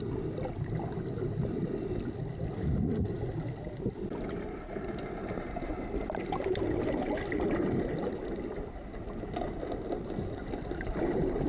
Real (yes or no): yes